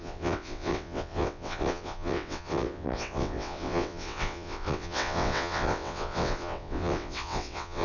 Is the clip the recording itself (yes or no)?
no